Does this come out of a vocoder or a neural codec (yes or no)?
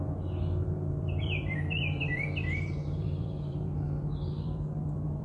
yes